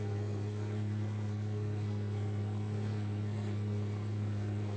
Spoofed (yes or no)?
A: yes